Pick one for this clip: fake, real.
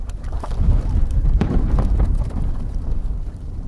fake